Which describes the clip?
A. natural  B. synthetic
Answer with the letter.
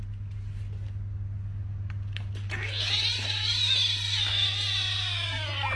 A